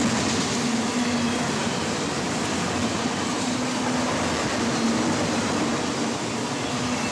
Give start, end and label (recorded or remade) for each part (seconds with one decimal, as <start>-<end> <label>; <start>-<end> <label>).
0.0-7.1 recorded